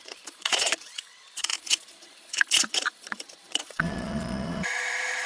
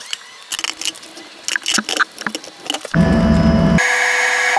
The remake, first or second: first